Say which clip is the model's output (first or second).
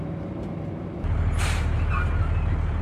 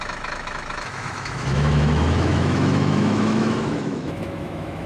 second